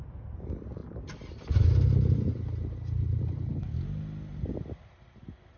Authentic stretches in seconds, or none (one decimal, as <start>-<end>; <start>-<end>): 0.0-5.6